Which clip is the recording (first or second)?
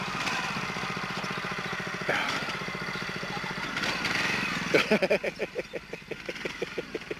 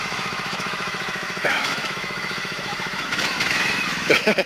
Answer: first